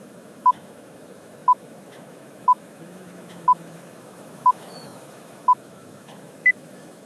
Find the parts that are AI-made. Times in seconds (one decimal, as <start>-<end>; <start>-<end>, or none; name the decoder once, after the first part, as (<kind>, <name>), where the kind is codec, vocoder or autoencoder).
0.0-7.1 (autoencoder, DAC-VAE)